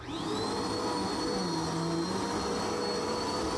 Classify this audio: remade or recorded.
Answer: recorded